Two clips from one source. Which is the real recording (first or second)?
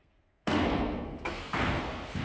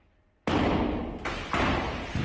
second